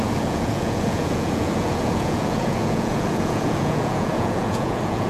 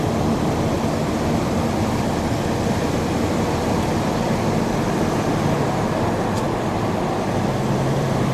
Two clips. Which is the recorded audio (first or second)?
second